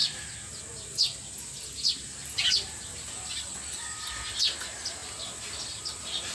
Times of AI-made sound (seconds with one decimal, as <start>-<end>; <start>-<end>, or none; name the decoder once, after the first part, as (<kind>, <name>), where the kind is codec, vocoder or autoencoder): none